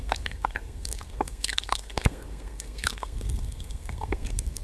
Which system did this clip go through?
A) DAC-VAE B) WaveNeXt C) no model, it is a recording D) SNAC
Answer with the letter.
D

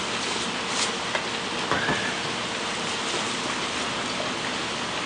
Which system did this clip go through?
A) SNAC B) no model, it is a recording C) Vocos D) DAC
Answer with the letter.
B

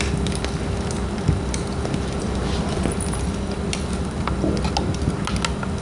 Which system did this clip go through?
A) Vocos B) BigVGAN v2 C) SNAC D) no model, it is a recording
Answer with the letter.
D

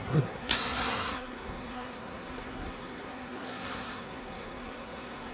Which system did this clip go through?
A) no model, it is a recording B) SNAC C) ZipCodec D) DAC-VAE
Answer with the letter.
B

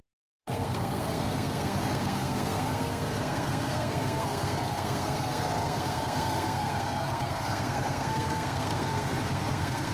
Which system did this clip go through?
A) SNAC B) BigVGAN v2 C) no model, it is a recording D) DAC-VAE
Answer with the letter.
A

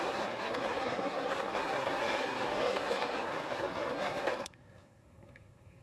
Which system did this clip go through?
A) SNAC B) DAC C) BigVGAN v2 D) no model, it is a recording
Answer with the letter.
A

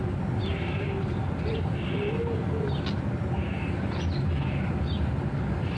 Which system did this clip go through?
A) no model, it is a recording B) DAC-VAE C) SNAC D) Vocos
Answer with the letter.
A